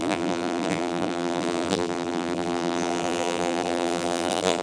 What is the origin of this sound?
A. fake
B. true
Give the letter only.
A